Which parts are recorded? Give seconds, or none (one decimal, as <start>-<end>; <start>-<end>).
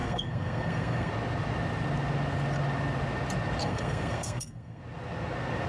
1.1-3.6; 4.8-5.7